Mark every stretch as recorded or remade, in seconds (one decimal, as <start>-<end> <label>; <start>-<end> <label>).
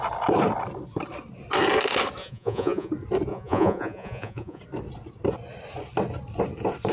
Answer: 0.0-2.2 recorded; 2.2-2.9 remade; 2.9-3.3 recorded; 3.3-4.6 remade; 4.6-6.9 recorded